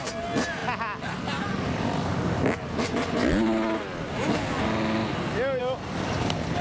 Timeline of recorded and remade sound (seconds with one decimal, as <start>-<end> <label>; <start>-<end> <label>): 0.0-6.6 recorded